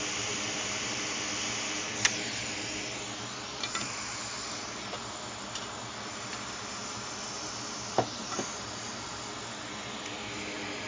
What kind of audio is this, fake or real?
real